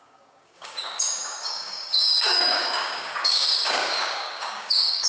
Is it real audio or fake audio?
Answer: fake